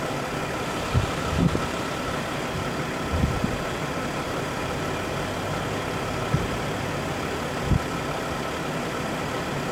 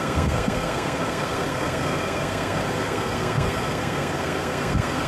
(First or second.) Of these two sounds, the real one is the first